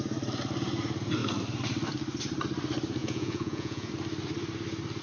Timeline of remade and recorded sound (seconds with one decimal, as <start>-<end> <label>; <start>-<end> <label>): 0.0-3.0 recorded; 3.0-3.9 remade; 3.9-5.0 recorded